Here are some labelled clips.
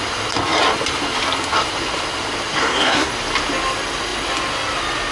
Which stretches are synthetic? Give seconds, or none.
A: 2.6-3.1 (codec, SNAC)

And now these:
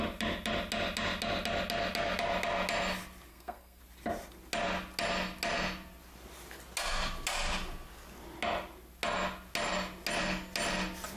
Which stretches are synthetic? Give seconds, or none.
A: 3.3-3.8 (codec, SNAC)